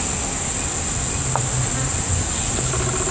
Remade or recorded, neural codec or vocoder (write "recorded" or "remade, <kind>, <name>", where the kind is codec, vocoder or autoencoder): recorded